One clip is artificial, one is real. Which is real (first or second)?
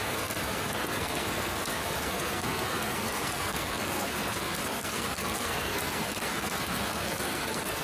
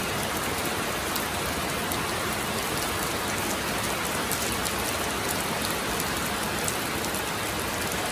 second